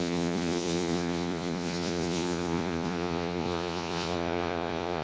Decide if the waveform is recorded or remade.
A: remade